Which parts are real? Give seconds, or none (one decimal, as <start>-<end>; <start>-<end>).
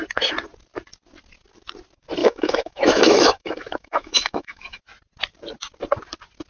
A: 0.0-2.2; 4.8-6.5